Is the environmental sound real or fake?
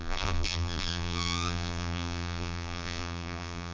fake